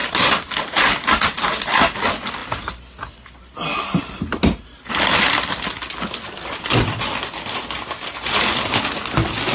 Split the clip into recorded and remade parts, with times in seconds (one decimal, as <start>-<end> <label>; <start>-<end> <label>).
0.0-9.5 recorded